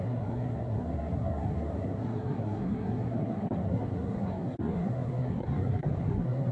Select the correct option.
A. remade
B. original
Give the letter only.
A